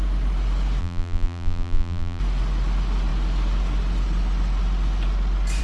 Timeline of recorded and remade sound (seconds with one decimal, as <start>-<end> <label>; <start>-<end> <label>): 0.0-0.8 recorded; 0.8-2.2 remade; 2.2-5.6 recorded